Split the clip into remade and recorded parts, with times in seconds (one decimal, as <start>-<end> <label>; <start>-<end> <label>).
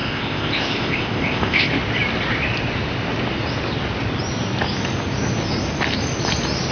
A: 0.0-1.7 remade; 1.7-6.7 recorded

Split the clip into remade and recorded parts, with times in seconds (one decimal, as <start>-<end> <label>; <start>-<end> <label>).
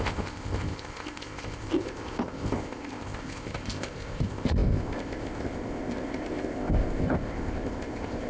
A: 0.0-8.3 remade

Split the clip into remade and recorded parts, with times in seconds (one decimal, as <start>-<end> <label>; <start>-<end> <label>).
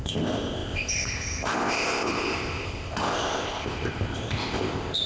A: 0.0-5.1 remade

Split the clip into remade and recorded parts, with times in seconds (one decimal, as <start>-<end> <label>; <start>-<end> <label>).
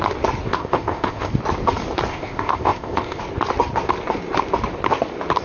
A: 0.0-0.5 recorded; 0.5-1.3 remade; 1.3-2.1 recorded; 2.1-3.2 remade; 3.2-5.4 recorded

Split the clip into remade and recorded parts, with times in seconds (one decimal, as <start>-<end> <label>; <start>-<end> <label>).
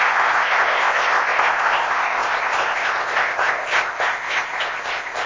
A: 0.0-5.3 remade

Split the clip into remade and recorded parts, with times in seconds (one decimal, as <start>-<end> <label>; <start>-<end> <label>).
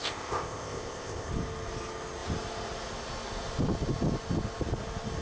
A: 0.0-1.3 remade; 1.3-5.2 recorded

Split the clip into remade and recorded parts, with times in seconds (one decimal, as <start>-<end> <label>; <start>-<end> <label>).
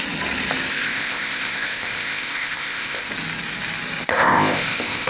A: 0.0-0.7 recorded; 0.7-3.1 remade; 3.1-4.1 recorded; 4.1-5.1 remade